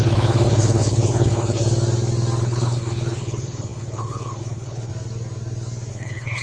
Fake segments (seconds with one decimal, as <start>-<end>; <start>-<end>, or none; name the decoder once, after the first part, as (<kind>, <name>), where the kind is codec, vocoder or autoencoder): 0.0-1.6 (codec, HILCodec); 2.4-4.9; 5.9-6.4